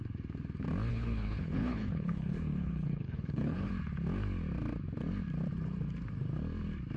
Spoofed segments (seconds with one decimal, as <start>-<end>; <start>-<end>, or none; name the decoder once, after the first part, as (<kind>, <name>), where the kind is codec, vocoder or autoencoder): 0.9-3.7 (codec, HILCodec)